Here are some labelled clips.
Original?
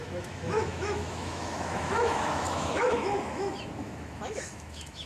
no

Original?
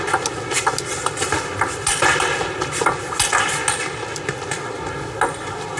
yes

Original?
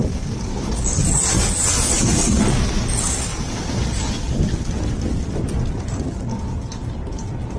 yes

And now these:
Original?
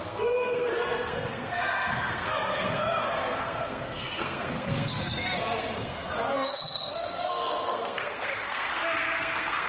no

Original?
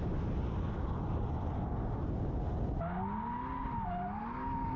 yes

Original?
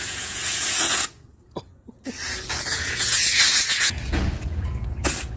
no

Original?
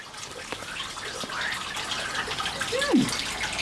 yes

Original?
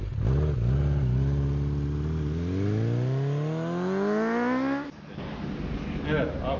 yes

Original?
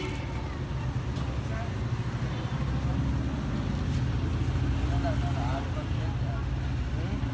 yes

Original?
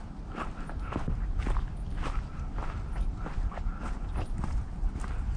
yes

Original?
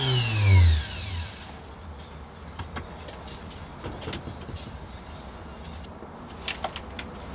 yes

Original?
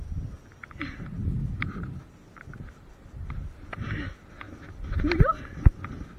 yes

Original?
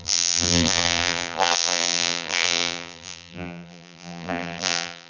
no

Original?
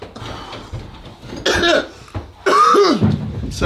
yes